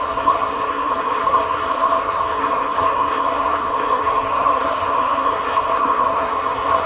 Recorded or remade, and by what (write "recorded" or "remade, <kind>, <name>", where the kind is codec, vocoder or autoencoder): remade, codec, SNAC